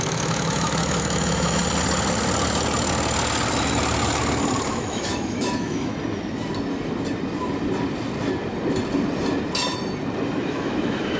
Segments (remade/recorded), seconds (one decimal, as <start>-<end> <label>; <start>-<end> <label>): 0.0-1.6 remade; 1.6-4.7 recorded; 4.7-5.9 remade; 5.9-10.4 recorded; 10.4-11.2 remade